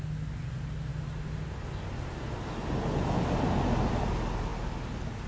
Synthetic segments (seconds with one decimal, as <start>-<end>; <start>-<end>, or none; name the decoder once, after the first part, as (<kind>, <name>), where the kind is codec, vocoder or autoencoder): none